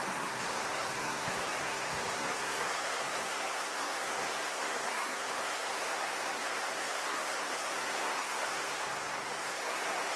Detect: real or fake fake